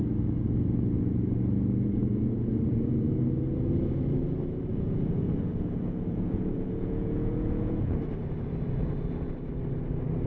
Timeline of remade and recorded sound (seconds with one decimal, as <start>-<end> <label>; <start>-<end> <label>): 0.0-2.0 recorded; 2.0-3.2 remade; 3.2-4.7 recorded; 4.7-8.0 remade; 8.0-10.3 recorded

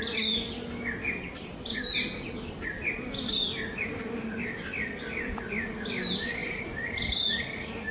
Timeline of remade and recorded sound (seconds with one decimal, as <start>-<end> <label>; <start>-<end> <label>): 0.0-7.9 recorded

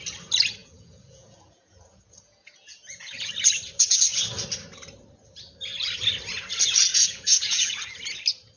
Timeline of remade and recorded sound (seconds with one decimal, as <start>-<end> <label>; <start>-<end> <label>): 0.0-0.6 recorded; 0.6-3.3 remade; 3.3-6.9 recorded; 6.9-7.9 remade; 7.9-8.6 recorded

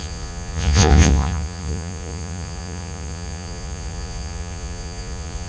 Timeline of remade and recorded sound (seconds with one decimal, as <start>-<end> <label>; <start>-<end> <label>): 0.0-5.5 remade

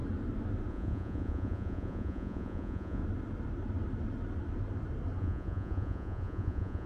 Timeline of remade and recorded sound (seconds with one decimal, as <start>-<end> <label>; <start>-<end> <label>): 0.0-0.7 recorded; 0.7-3.0 remade; 3.0-5.2 recorded; 5.2-6.9 remade

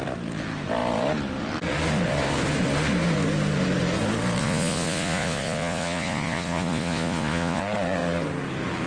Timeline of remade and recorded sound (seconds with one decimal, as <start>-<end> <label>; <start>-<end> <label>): 0.0-4.4 recorded; 4.4-7.6 remade; 7.6-8.9 recorded

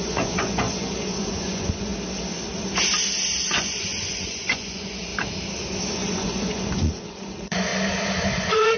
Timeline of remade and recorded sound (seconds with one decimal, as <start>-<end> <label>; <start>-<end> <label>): 0.0-1.9 remade; 1.9-3.5 recorded; 3.5-5.1 remade; 5.1-5.9 recorded; 5.9-7.7 remade; 7.7-8.3 recorded; 8.3-8.8 remade

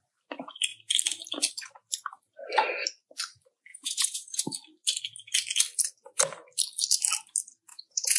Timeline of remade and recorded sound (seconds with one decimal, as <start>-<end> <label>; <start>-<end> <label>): 0.0-3.7 recorded; 3.7-4.4 remade; 4.4-7.7 recorded; 7.7-8.2 remade